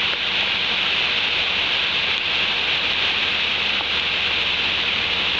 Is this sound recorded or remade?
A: recorded